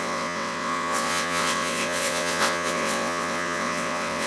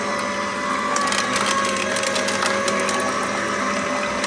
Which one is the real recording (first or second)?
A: second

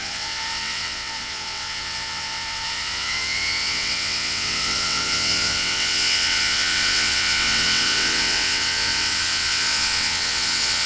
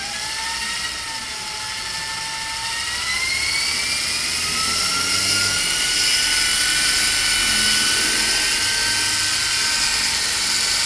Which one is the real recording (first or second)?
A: second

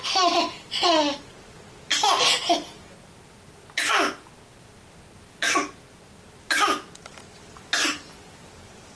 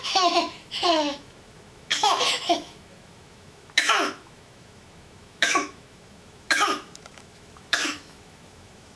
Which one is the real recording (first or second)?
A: first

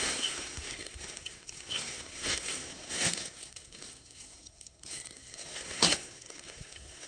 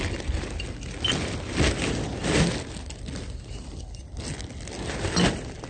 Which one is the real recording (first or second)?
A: second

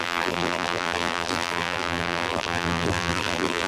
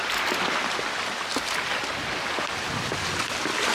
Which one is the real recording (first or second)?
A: second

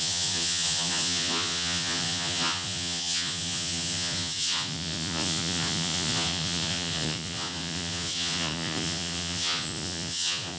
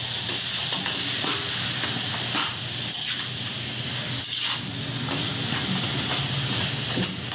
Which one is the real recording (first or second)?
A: second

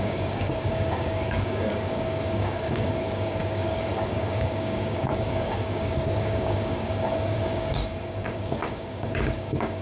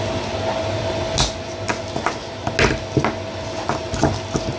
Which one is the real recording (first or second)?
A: second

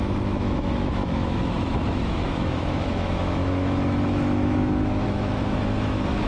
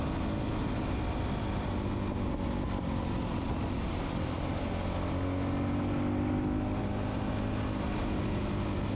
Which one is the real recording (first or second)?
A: second